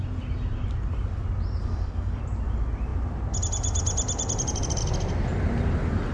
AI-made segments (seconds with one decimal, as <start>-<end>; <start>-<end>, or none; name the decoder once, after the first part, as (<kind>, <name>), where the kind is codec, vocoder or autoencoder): 1.6-2.2 (codec, DAC)